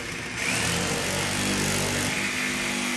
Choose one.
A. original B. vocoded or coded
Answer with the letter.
A